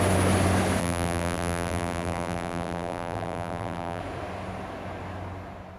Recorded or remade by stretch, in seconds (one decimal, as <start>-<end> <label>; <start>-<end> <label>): 0.0-0.8 recorded; 0.8-4.0 remade; 4.0-5.8 recorded